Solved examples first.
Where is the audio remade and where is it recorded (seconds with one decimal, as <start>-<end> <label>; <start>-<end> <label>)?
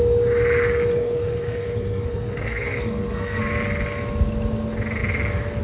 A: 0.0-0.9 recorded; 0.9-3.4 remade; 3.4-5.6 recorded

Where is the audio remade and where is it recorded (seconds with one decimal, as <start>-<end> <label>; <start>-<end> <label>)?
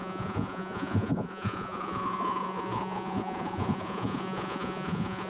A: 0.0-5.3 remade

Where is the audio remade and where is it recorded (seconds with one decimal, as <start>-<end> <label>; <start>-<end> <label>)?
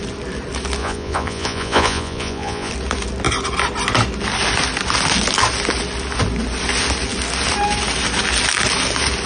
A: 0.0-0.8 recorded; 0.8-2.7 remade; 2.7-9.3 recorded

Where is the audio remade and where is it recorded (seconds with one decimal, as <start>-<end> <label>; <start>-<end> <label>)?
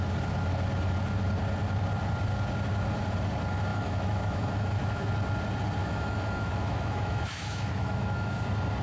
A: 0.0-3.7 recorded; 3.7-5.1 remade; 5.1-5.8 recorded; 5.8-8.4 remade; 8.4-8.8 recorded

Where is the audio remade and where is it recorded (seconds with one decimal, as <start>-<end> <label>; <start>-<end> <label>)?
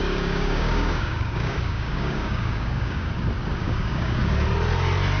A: 0.0-3.1 remade; 3.1-3.6 recorded; 3.6-4.3 remade; 4.3-5.2 recorded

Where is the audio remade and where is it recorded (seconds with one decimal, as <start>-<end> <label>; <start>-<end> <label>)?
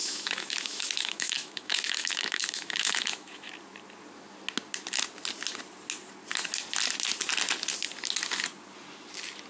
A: 0.0-3.5 remade; 3.5-9.5 recorded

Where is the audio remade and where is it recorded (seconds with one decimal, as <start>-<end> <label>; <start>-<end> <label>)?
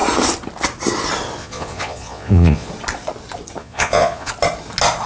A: 0.0-1.4 recorded; 1.4-2.7 remade; 2.7-3.6 recorded; 3.6-4.3 remade; 4.3-5.1 recorded